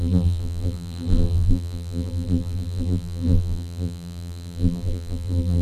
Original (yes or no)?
no